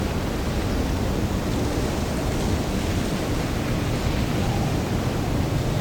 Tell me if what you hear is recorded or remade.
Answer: remade